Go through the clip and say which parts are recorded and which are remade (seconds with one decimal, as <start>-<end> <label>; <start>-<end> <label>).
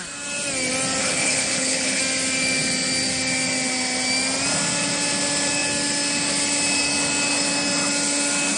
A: 0.0-1.0 recorded; 1.0-2.0 remade; 2.0-8.6 recorded